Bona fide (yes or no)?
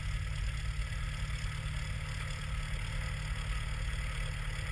yes